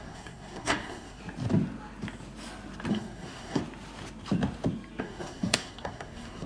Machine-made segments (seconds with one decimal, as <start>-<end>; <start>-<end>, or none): 0.0-1.2; 2.9-3.6; 5.0-6.5

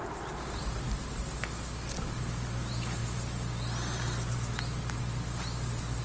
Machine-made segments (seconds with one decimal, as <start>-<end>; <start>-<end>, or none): 0.0-0.6